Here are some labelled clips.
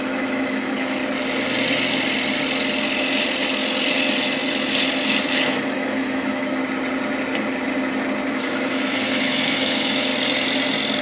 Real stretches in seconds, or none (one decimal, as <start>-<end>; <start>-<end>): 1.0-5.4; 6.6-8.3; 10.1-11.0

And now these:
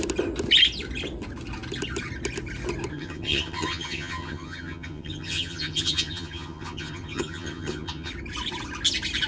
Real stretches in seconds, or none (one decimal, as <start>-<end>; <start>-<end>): 0.0-2.9; 8.1-9.3

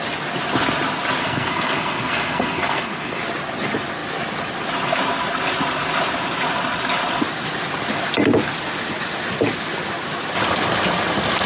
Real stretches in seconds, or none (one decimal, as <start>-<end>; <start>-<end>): 0.0-1.2; 3.2-11.5

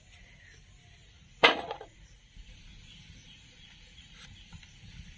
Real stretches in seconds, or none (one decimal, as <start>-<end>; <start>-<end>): 0.0-1.0; 2.6-3.2; 4.5-5.2